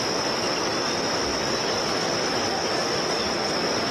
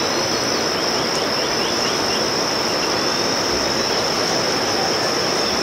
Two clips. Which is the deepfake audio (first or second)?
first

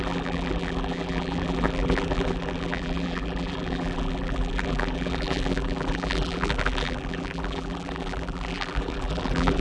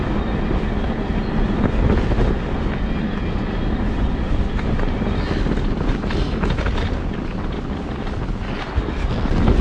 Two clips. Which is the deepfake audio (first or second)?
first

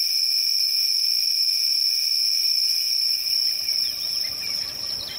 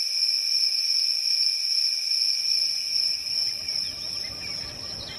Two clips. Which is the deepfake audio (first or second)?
first